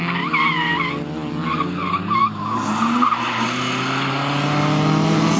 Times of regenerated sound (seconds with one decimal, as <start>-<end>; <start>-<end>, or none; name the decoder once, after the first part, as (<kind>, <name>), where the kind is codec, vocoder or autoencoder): none